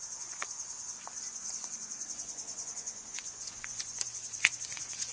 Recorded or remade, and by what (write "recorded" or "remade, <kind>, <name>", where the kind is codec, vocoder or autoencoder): remade, vocoder, Vocos